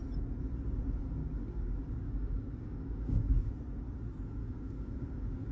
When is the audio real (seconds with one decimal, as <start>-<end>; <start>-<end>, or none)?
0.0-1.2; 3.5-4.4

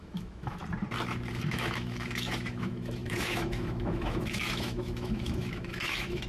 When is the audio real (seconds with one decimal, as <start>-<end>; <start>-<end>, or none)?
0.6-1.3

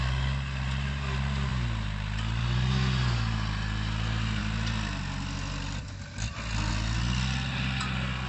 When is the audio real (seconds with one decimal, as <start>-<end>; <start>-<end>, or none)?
0.0-1.5; 2.4-4.4; 6.7-8.3

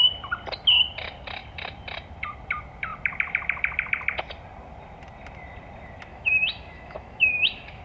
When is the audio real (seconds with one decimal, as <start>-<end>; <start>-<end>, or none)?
0.0-6.1

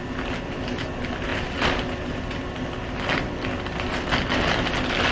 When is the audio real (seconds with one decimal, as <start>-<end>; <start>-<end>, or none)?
0.0-5.1

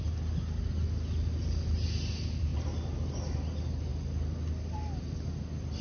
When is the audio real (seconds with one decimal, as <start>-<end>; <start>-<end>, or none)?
0.0-5.8